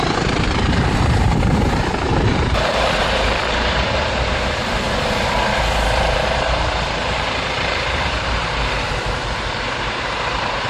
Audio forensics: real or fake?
fake